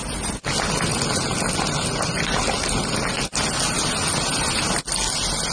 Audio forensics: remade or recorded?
recorded